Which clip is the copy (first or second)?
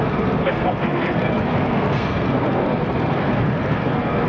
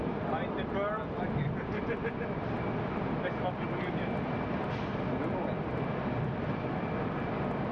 first